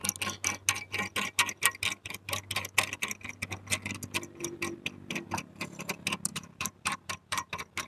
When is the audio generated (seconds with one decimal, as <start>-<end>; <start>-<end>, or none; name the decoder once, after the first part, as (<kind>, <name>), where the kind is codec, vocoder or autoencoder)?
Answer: 6.3-7.5 (vocoder, BigVGAN v2)